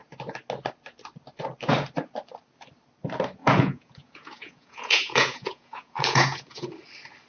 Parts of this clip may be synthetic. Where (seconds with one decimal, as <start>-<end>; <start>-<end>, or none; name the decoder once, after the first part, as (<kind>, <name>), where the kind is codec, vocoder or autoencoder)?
3.4-6.7 (vocoder, Vocos)